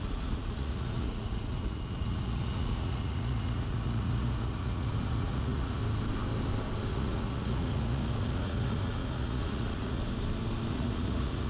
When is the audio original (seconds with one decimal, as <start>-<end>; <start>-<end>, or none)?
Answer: 5.8-6.9; 10.0-10.7